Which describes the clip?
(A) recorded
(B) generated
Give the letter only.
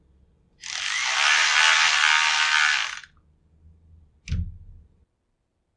A